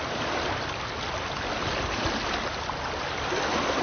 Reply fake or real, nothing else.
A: real